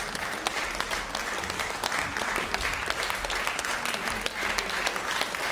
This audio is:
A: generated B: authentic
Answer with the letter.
B